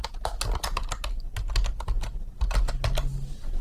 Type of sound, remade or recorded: recorded